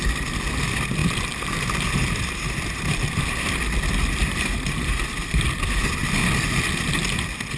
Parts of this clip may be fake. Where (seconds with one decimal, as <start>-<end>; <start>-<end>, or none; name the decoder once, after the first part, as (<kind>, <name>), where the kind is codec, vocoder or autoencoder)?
1.0-2.9 (vocoder, BigVGAN v2); 4.2-5.4